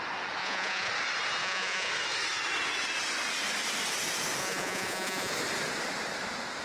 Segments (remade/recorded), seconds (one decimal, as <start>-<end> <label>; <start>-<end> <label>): 0.0-0.4 recorded; 0.4-0.9 remade; 0.9-1.4 recorded; 1.4-1.9 remade; 1.9-4.4 recorded; 4.4-5.3 remade; 5.3-6.6 recorded